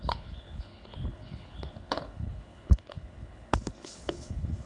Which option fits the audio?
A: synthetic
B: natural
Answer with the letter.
A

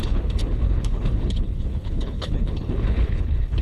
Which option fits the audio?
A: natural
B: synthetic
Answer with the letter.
B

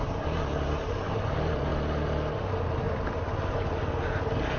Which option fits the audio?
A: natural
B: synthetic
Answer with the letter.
A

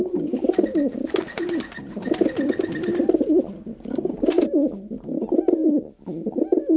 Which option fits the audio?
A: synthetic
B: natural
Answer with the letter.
B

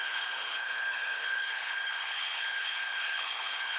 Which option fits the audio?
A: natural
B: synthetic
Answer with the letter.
B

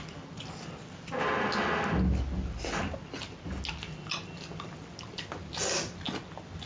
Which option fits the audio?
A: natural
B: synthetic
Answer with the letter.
A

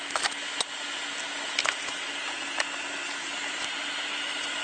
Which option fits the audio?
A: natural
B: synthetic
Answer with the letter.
A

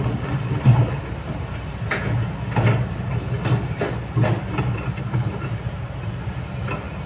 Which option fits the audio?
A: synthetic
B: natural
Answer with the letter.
B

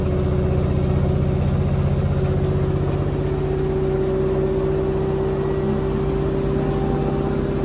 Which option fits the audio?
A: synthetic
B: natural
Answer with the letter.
B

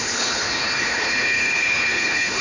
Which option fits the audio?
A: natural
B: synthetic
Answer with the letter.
B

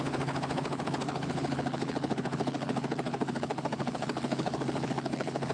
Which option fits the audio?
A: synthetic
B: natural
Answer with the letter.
A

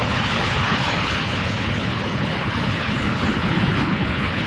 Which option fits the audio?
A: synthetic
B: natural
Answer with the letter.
A